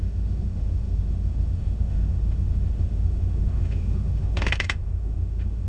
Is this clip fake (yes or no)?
yes